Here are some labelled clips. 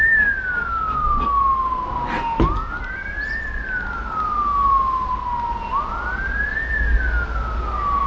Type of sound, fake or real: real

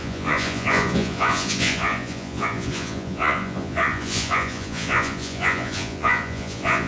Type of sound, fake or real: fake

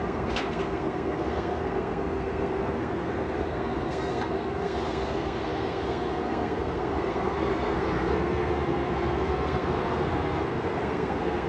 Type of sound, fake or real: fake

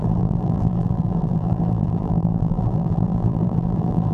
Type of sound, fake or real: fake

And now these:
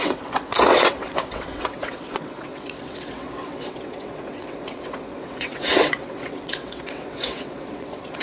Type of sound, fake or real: fake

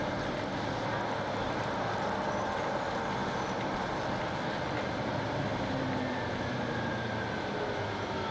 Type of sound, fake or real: real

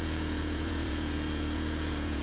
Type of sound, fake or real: fake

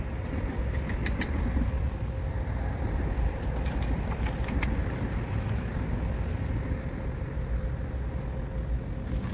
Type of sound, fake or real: real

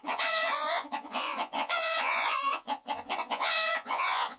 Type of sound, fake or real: fake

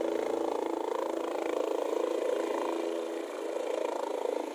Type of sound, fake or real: real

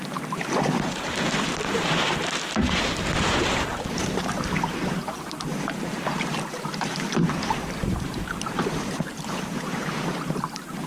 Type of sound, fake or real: fake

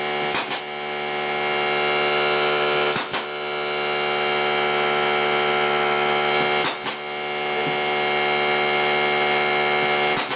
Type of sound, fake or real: real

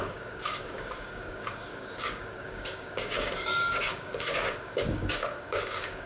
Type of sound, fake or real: fake